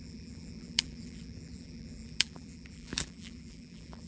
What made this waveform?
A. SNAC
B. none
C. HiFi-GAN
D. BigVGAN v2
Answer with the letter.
D